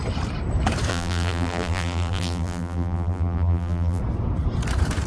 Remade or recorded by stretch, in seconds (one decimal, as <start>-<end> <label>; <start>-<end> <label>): 0.0-0.9 recorded; 0.9-4.0 remade; 4.0-5.1 recorded